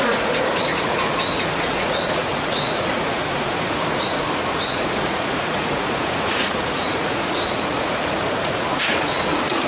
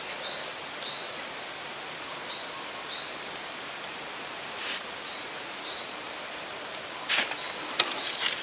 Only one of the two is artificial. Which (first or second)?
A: first